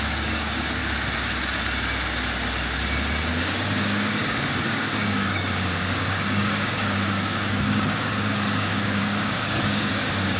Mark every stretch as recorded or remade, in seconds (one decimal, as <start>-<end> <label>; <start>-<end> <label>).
0.0-0.8 remade; 0.8-3.4 recorded; 3.4-10.4 remade